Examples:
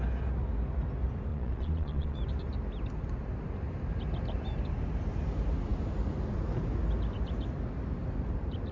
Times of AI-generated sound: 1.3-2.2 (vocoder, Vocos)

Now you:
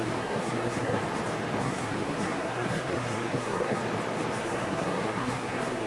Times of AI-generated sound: 0.0-1.0 (codec, SNAC); 1.6-3.8; 4.4-5.9